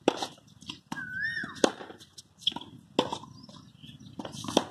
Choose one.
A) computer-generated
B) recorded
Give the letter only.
B